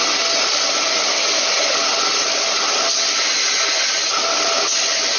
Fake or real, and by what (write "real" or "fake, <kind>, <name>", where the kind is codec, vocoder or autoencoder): real